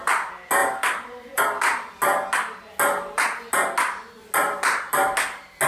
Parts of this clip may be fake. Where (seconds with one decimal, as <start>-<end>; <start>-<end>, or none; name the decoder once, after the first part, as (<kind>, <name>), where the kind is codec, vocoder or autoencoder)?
0.6-1.4 (vocoder, BigVGAN v2)